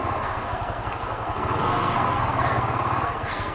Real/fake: fake